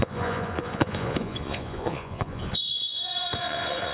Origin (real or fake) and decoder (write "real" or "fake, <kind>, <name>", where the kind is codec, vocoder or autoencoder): fake, vocoder, Vocos